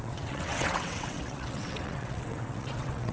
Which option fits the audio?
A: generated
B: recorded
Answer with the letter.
A